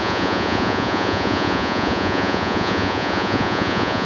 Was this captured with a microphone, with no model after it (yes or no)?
no